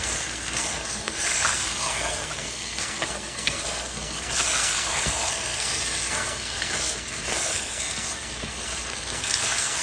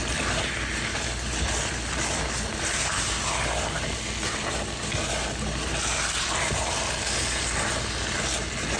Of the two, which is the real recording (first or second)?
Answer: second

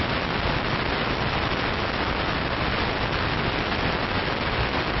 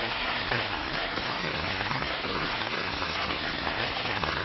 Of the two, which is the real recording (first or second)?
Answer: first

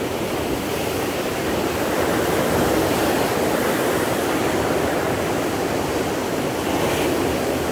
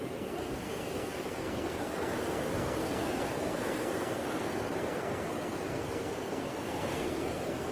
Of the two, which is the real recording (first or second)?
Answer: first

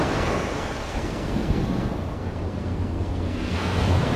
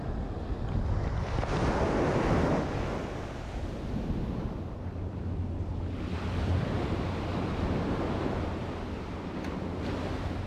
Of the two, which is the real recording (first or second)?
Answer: second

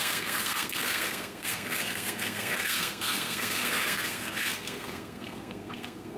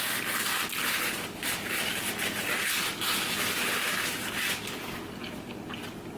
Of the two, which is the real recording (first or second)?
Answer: second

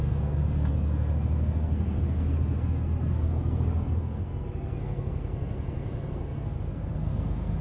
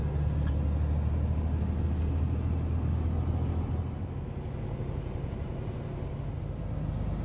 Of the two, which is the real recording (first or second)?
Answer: second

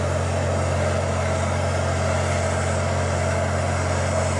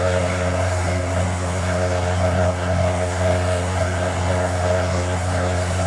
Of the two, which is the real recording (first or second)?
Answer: first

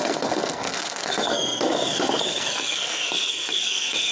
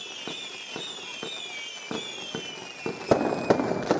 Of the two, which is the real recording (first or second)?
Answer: second